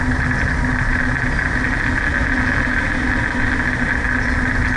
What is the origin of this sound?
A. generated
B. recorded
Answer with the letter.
B